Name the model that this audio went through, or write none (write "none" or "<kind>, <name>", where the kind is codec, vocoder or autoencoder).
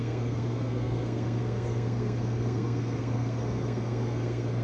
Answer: codec, SNAC